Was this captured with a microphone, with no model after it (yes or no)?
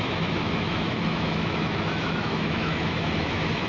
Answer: no